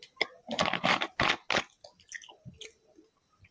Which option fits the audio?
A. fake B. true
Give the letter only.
B